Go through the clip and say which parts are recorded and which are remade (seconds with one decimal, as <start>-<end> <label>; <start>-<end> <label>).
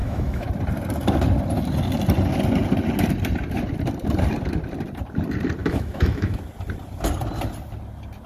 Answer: 0.0-0.5 remade; 0.5-5.6 recorded; 5.6-6.4 remade; 6.4-8.3 recorded